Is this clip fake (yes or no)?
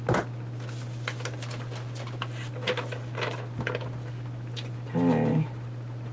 no